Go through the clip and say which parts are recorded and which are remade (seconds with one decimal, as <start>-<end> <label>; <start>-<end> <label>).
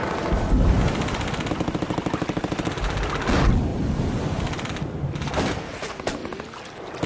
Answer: 0.0-7.1 recorded